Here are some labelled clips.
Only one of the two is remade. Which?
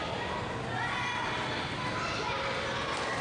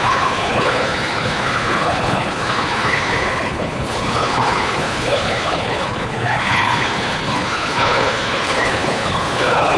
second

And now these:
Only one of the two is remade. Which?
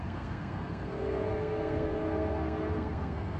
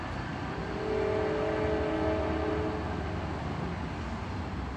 first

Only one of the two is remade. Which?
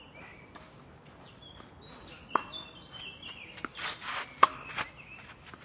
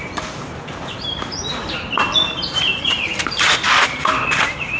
second